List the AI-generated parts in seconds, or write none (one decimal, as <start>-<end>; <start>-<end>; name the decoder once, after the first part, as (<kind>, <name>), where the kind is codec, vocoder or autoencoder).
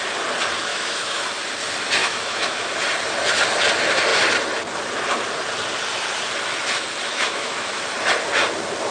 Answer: 0.7-1.2 (autoencoder, DAC-VAE); 2.0-2.7; 7.1-7.8